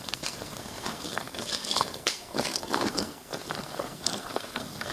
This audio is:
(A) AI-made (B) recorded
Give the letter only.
A